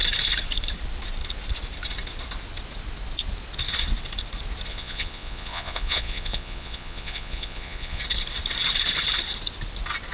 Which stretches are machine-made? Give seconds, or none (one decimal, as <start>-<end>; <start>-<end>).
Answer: 4.7-8.0